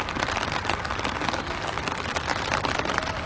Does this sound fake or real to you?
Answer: real